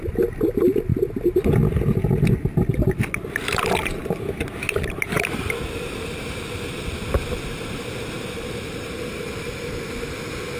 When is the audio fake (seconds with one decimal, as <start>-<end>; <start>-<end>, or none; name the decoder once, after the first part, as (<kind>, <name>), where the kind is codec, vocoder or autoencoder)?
none

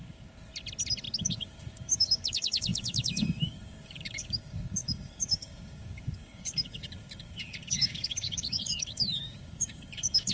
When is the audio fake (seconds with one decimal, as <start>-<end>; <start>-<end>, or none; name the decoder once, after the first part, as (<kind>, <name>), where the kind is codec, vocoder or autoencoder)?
0.0-0.5 (codec, DAC); 1.2-10.3

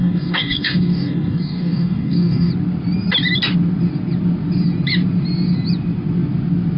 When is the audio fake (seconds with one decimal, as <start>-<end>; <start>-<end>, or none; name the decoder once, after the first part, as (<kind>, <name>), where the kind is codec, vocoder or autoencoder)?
0.0-2.5 (codec, DAC)

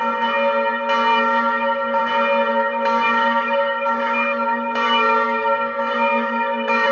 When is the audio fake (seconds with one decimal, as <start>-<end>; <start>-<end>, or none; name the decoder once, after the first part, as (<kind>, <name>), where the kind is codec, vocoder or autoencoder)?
1.1-2.0 (codec, DAC); 2.5-6.9

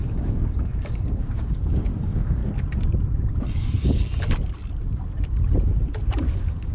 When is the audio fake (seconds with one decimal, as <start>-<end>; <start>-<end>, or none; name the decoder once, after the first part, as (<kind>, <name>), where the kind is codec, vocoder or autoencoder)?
0.0-2.4 (codec, DAC); 6.3-6.7

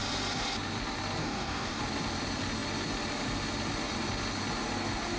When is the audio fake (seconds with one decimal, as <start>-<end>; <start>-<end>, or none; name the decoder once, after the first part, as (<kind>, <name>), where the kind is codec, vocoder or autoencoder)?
1.2-1.8 (codec, DAC)

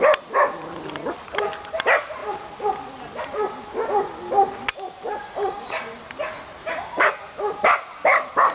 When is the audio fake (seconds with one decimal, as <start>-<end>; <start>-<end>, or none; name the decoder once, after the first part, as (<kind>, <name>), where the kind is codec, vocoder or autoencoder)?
5.1-6.0 (codec, DAC); 6.6-7.1

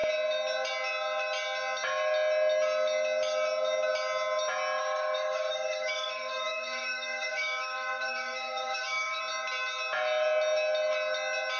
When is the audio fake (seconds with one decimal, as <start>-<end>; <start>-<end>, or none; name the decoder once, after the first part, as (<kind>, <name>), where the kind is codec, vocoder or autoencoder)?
4.8-9.2 (codec, DAC)